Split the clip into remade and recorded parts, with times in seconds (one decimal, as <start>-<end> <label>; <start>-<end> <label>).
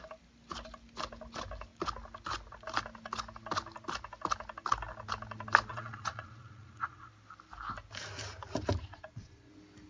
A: 0.0-5.7 recorded; 5.7-7.1 remade; 7.1-8.9 recorded; 8.9-9.5 remade; 9.5-9.9 recorded